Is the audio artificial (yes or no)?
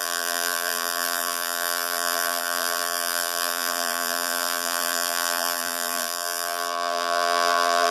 yes